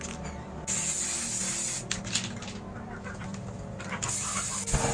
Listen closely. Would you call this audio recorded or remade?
recorded